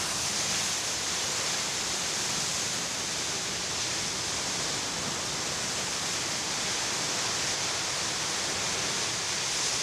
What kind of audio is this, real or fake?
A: real